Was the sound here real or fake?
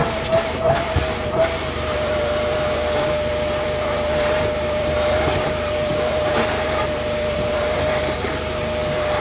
fake